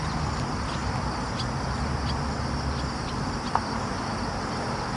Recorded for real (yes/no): yes